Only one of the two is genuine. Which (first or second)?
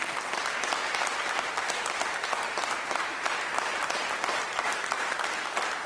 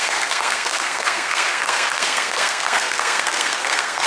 first